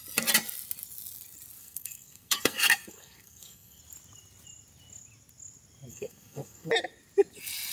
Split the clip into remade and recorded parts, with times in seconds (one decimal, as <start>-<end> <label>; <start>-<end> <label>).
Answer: 0.0-1.6 recorded; 1.6-3.8 remade; 3.8-5.9 recorded; 5.9-6.7 remade; 6.7-7.7 recorded